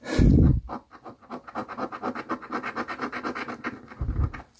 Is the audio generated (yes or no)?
no